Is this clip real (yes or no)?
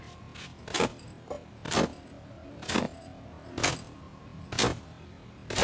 yes